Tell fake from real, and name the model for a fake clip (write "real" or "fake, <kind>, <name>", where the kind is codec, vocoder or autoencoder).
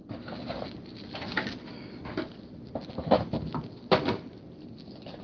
real